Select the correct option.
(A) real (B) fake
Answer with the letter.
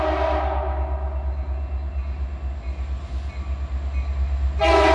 A